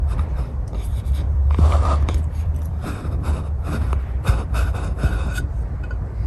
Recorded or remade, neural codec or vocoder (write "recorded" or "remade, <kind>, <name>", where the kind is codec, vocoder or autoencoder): remade, vocoder, BigVGAN v2